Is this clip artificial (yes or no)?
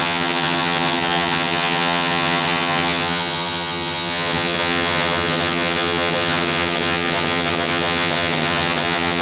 yes